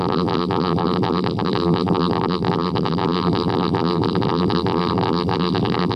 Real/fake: fake